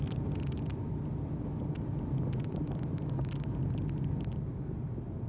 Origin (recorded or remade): recorded